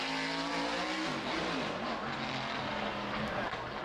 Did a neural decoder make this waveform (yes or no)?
no